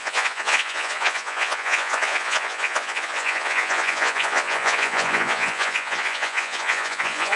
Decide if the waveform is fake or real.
fake